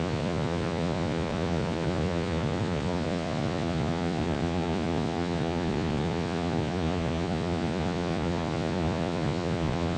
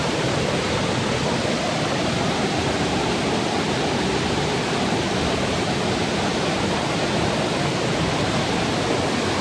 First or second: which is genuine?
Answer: second